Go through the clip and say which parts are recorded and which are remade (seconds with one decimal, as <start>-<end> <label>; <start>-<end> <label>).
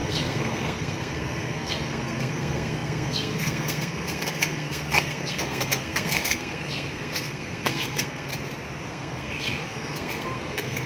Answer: 0.0-8.3 remade; 8.3-8.9 recorded; 8.9-10.9 remade